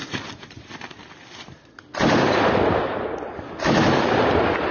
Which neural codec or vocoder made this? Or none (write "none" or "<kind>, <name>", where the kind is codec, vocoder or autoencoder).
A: none